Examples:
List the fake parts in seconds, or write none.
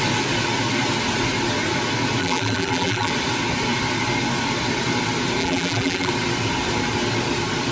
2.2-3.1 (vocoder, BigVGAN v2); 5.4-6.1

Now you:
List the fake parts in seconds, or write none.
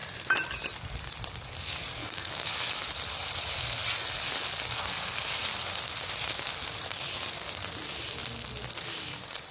2.0-2.5 (autoencoder, DAC-VAE)